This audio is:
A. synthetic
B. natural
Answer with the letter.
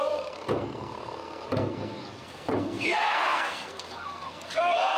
A